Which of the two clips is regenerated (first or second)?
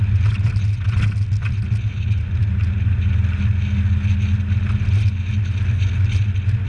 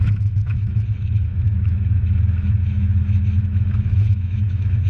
second